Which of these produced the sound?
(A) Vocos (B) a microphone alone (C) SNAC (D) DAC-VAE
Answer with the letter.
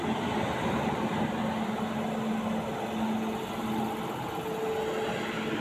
B